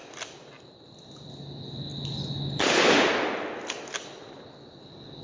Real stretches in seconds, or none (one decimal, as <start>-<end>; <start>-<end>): 0.0-5.2